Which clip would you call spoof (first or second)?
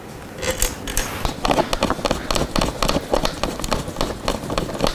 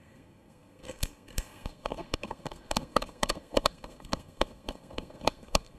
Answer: second